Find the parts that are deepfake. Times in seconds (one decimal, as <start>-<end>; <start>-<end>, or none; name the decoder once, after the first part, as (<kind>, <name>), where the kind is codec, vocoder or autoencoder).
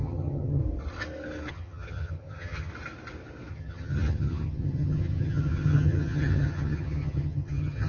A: 0.0-0.6 (vocoder, HiFi-GAN); 1.5-2.7; 3.5-7.9